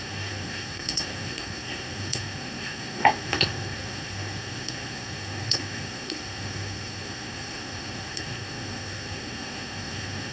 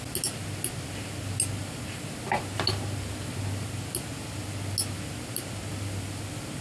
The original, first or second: second